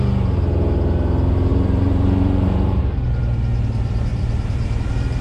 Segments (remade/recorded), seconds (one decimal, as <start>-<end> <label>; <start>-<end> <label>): 0.0-1.5 recorded; 1.5-2.8 remade; 2.8-4.1 recorded; 4.1-5.2 remade

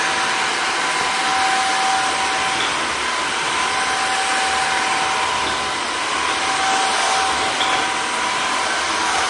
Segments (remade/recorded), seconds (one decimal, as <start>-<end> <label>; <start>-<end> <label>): 0.0-9.3 recorded

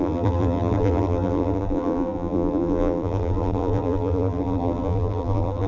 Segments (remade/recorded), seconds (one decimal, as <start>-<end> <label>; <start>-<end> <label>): 0.0-5.7 remade